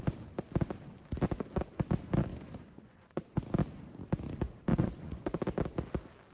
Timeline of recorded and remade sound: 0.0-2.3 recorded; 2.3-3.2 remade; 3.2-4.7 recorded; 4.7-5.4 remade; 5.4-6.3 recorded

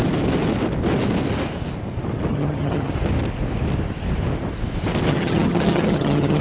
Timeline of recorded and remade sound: 0.0-2.3 recorded; 2.3-2.9 remade; 2.9-5.1 recorded; 5.1-6.4 remade

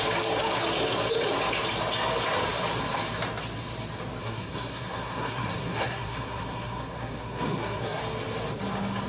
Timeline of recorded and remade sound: 0.0-4.2 recorded; 4.2-8.0 remade; 8.0-9.1 recorded

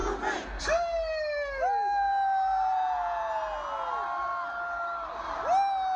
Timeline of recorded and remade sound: 0.0-6.0 recorded

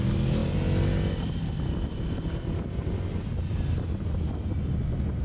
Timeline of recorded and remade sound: 0.0-5.2 recorded

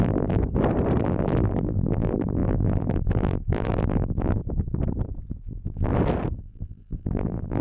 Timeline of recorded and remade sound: 0.0-0.4 remade; 0.4-1.0 recorded; 1.0-4.4 remade; 4.4-5.4 recorded; 5.4-5.9 remade; 5.9-6.4 recorded; 6.4-7.6 remade

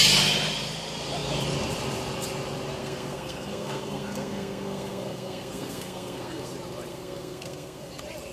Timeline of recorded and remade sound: 0.0-2.8 recorded; 2.8-6.5 remade; 6.5-6.9 recorded; 6.9-7.9 remade; 7.9-8.3 recorded

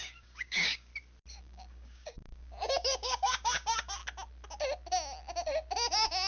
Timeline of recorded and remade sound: 0.0-0.9 remade; 0.9-1.4 recorded; 1.4-4.0 remade; 4.0-6.3 recorded